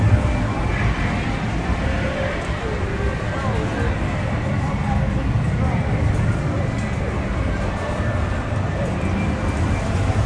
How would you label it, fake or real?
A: real